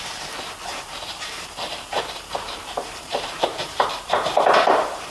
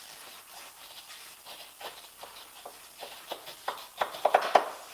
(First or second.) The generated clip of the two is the first